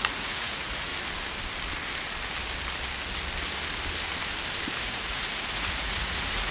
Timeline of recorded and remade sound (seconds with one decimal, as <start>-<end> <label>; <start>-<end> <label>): 0.0-0.9 remade; 0.9-4.8 recorded; 4.8-6.5 remade